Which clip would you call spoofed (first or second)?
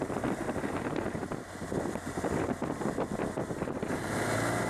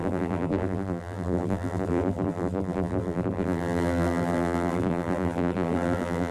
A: second